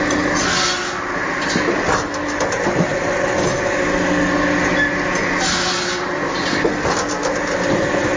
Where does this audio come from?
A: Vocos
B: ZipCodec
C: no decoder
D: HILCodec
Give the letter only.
C